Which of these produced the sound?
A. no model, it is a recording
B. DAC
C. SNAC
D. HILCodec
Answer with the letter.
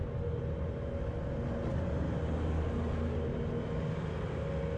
A